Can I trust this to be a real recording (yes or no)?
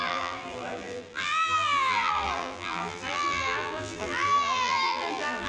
no